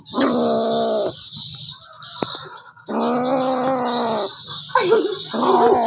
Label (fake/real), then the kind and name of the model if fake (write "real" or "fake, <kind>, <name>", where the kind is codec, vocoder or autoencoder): real